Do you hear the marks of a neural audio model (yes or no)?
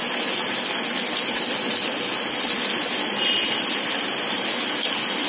no